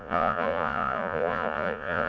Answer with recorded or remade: remade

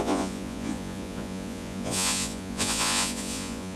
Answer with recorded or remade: remade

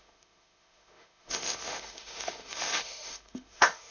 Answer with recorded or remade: remade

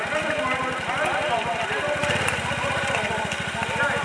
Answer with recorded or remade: recorded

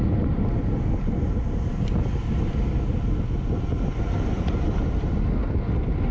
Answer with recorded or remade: recorded